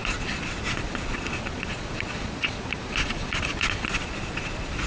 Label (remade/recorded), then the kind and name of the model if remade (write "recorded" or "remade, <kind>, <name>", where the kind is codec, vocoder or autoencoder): remade, vocoder, Vocos